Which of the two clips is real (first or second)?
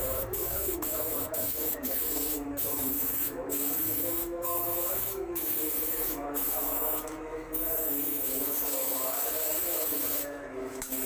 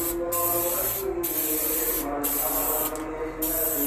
second